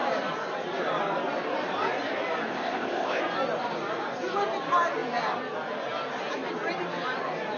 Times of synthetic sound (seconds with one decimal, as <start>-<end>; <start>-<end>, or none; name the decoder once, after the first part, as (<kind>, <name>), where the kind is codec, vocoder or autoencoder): 2.5-3.2 (codec, ZipCodec)